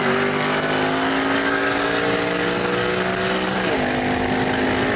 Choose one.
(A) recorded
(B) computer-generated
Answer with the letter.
A